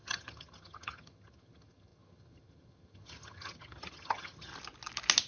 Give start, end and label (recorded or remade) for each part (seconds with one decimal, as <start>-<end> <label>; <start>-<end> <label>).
0.0-4.5 remade; 4.5-5.3 recorded